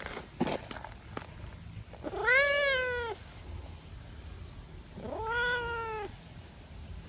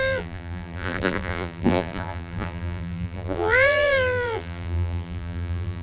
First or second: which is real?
first